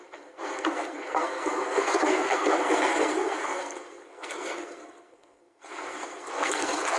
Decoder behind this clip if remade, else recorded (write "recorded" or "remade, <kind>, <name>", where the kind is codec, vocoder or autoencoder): remade, codec, SNAC